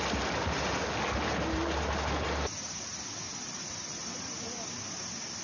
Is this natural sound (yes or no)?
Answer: yes